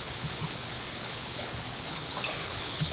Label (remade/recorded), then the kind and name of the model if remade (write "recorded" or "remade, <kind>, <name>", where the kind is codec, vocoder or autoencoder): remade, codec, HILCodec